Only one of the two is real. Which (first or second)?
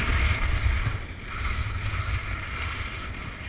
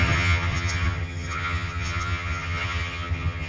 first